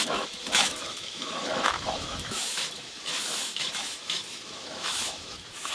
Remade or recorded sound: remade